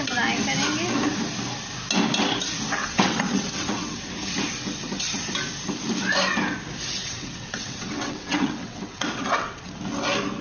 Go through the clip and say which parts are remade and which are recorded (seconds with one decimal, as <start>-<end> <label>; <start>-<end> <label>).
0.0-2.8 recorded; 2.8-4.0 remade; 4.0-7.0 recorded; 7.0-9.7 remade; 9.7-10.4 recorded

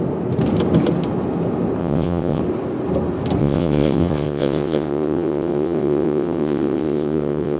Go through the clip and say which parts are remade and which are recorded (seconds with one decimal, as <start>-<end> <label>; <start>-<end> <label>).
0.0-1.8 recorded; 1.8-2.4 remade; 2.4-3.4 recorded; 3.4-7.6 remade